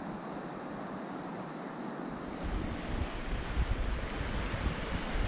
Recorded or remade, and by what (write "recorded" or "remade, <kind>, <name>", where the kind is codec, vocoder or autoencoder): recorded